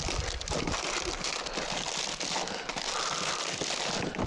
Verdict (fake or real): real